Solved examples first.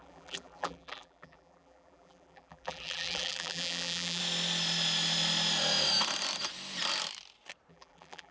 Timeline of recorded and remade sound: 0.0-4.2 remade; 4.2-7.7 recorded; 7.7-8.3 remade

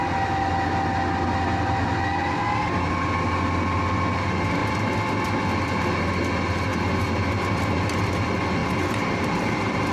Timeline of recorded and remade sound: 0.0-8.6 recorded; 8.6-9.9 remade

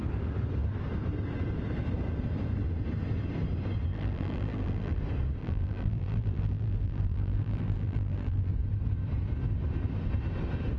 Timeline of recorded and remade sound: 0.0-3.9 recorded; 3.9-5.0 remade; 5.0-5.4 recorded; 5.4-8.5 remade; 8.5-10.8 recorded

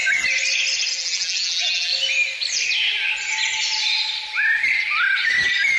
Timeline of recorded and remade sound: 0.0-0.9 recorded; 0.9-1.9 remade; 1.9-5.8 recorded

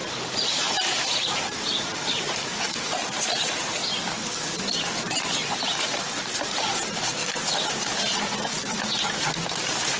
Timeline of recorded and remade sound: 0.0-3.8 remade; 3.8-4.4 recorded; 4.4-10.0 remade

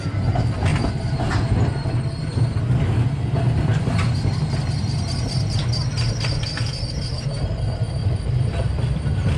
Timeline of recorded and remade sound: 0.0-0.7 recorded; 0.7-1.6 remade; 1.6-8.0 recorded; 8.0-9.4 remade